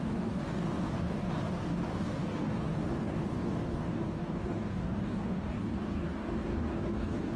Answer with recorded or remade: remade